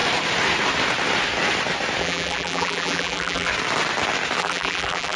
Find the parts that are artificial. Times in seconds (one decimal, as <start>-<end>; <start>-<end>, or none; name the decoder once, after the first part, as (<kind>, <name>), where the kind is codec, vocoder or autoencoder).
2.0-3.5 (vocoder, BigVGAN v2); 4.4-5.2